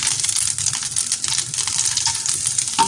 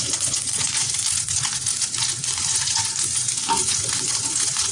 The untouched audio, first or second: first